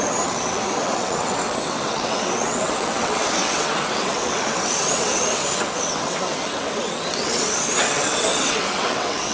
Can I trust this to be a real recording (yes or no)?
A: no